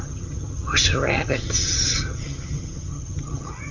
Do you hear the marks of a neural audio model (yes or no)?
yes